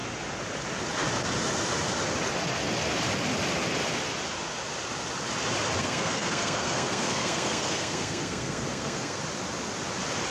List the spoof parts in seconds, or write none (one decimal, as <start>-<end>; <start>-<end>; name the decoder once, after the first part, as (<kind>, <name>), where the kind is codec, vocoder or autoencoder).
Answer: 5.8-9.2 (codec, SNAC)